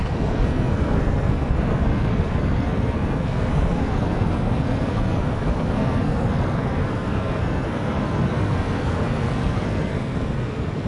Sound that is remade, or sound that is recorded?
remade